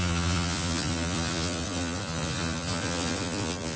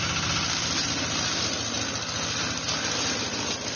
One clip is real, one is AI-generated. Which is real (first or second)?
second